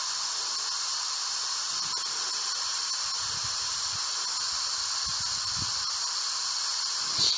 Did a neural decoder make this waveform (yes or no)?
no